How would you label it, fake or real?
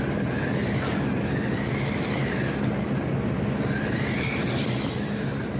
real